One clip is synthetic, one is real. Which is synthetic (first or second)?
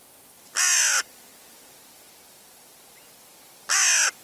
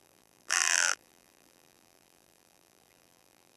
second